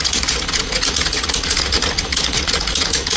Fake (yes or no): yes